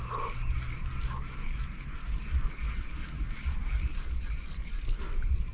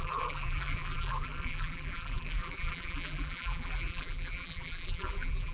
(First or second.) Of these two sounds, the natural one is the first